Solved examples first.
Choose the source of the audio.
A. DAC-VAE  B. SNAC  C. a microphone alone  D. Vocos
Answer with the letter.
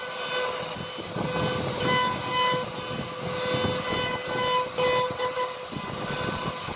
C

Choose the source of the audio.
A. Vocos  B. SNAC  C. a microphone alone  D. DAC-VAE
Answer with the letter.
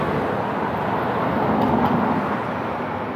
C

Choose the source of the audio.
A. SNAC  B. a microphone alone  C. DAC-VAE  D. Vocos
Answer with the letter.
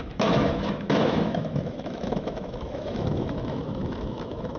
C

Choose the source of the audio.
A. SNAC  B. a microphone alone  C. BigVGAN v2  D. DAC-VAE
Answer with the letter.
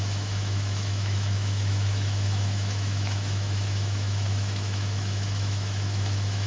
D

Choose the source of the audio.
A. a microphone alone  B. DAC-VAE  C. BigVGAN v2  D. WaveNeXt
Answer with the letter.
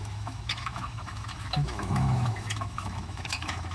B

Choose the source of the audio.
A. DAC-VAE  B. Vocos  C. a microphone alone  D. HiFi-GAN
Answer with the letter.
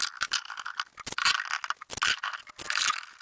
C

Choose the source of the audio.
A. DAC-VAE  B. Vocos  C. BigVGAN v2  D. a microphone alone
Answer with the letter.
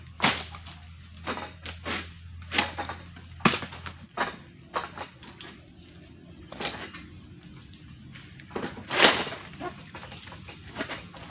D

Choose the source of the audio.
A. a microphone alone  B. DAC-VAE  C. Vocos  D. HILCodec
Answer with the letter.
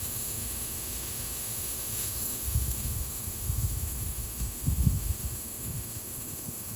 B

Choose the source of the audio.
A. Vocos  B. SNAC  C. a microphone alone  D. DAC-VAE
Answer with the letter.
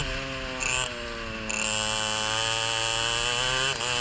C